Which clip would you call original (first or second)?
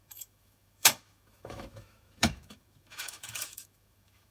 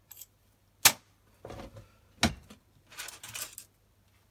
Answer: second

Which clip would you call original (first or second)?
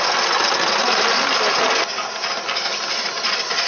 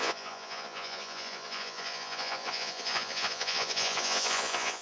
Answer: first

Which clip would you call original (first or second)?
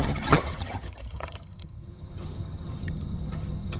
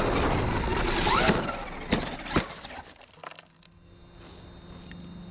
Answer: second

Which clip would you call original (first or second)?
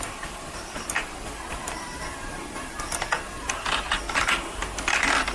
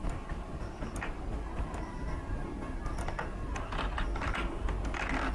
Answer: second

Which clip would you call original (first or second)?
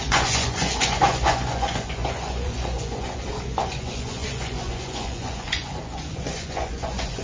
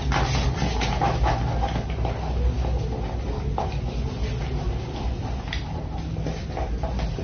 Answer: second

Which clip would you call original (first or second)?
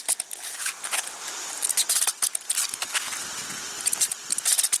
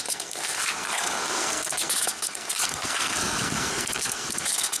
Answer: first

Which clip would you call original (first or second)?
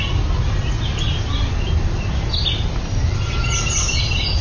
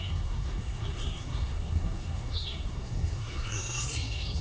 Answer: first